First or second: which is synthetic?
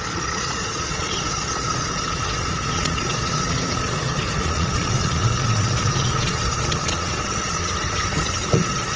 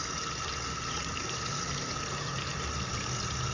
first